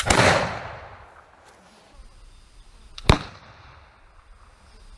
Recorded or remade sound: recorded